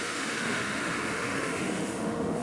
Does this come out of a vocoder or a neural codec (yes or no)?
yes